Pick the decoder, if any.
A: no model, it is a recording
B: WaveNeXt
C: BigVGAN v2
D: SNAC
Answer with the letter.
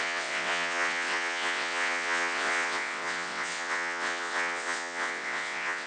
B